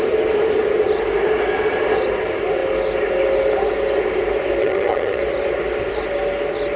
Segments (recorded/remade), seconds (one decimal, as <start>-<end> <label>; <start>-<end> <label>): 0.0-4.6 recorded; 4.6-5.2 remade; 5.2-6.8 recorded